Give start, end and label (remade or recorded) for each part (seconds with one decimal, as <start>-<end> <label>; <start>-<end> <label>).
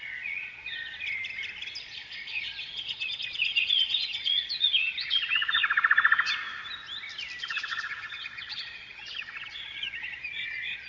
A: 0.0-0.9 remade; 0.9-1.8 recorded; 1.8-5.6 remade; 5.6-7.4 recorded; 7.4-10.9 remade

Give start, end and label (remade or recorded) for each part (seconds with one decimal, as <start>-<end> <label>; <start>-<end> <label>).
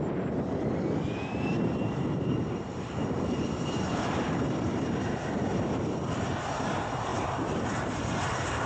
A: 0.0-1.5 recorded; 1.5-6.0 remade; 6.0-7.1 recorded; 7.1-8.0 remade; 8.0-8.7 recorded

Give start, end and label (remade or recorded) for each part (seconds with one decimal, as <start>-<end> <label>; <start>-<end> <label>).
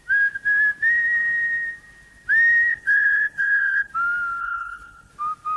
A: 0.0-2.7 recorded; 2.7-3.9 remade; 3.9-4.4 recorded; 4.4-5.1 remade; 5.1-5.6 recorded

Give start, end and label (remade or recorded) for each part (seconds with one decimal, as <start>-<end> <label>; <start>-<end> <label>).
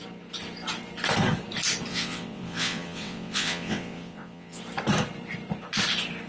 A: 0.0-1.9 recorded; 1.9-4.6 remade; 4.6-6.3 recorded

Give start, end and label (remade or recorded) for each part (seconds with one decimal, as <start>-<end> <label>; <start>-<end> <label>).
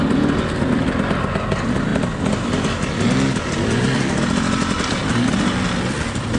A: 0.0-6.4 recorded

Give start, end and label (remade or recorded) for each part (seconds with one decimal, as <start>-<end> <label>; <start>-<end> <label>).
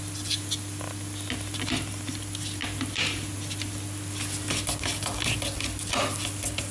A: 0.0-6.7 recorded